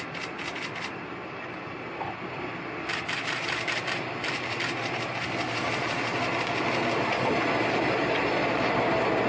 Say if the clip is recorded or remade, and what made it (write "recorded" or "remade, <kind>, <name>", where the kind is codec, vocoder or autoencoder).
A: recorded